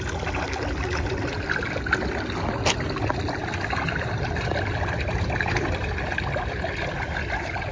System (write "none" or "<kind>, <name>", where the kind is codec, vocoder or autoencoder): none